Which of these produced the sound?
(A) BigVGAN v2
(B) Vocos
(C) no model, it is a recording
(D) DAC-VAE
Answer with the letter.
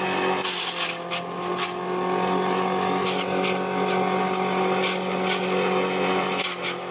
C